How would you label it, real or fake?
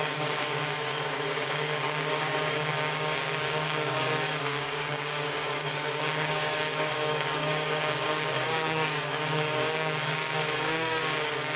fake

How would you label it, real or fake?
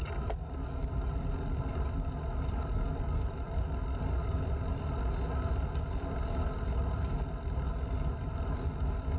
real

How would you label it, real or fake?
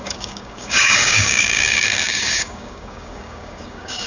fake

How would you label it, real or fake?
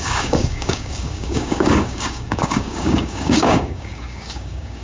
fake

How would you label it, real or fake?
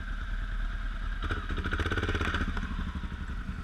real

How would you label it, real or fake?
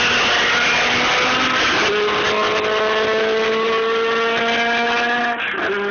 real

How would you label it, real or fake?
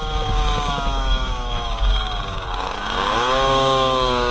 fake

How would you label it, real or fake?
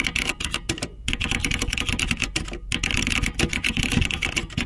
real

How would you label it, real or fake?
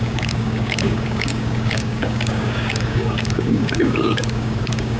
fake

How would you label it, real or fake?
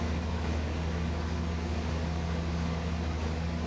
fake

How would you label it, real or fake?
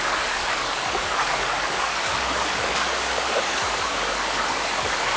fake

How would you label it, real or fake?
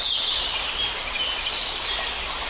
real